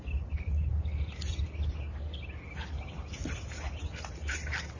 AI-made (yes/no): no